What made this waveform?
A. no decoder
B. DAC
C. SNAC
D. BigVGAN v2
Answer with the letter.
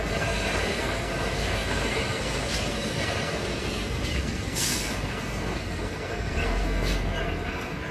C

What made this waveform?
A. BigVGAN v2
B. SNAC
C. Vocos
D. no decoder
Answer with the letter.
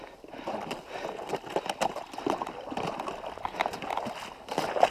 D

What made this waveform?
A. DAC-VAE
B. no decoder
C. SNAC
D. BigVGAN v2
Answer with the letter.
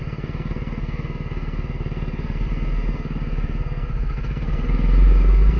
C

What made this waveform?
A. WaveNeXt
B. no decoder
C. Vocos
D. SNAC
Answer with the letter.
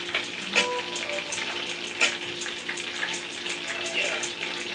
B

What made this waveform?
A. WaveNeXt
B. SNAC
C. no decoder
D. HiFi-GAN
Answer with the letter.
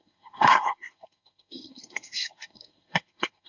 B